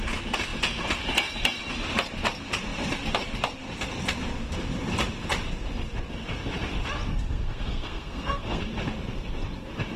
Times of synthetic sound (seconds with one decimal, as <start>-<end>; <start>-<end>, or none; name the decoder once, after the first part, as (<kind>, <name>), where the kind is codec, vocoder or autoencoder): 7.1-8.6 (codec, SNAC)